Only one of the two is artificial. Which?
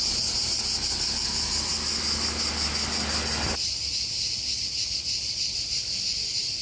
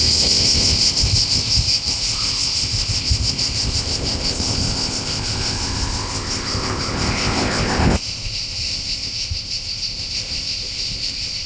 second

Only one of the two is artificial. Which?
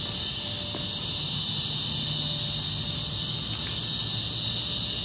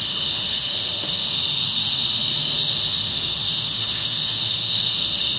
second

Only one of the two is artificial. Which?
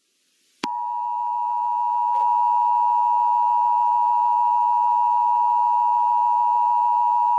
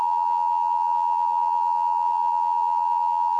second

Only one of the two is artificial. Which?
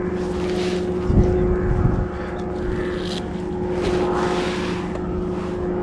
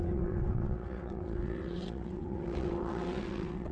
second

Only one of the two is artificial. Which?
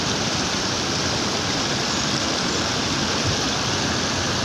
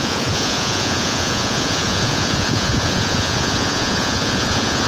second